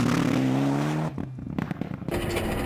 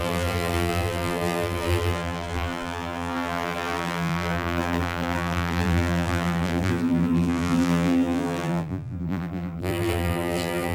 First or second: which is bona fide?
first